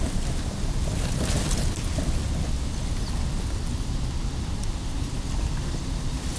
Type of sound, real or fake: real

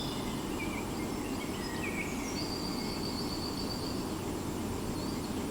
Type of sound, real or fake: real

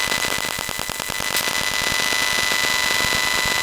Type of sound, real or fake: real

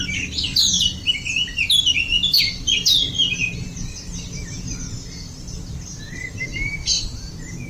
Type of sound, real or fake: real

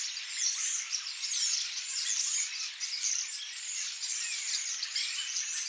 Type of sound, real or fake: real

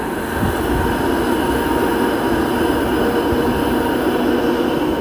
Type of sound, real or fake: real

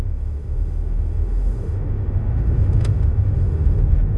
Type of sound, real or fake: fake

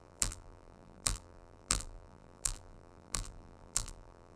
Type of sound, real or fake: fake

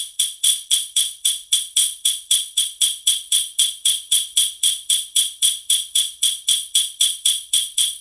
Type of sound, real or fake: fake